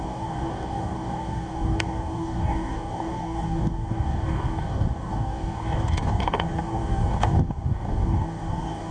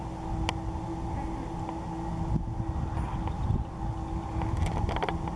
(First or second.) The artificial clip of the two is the first